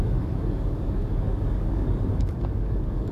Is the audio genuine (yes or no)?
no